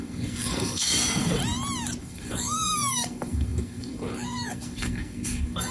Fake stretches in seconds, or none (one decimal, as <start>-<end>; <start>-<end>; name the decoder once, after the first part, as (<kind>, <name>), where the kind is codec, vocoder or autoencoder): 0.0-1.4 (codec, SNAC); 2.0-5.7